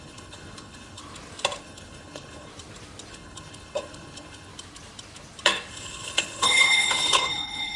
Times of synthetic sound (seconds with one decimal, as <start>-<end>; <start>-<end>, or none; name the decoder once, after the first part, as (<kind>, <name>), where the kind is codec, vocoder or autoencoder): 0.0-1.0 (codec, HILCodec); 1.6-2.5; 3.1-4.5; 5.7-7.8

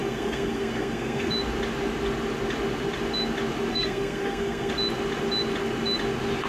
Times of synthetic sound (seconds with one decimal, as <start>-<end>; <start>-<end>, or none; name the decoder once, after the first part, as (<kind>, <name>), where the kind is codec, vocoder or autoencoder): 0.0-1.3 (codec, SNAC); 3.7-4.7